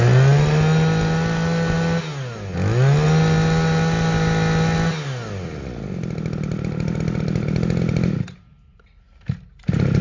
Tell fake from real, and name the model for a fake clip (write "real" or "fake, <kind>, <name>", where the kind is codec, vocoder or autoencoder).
real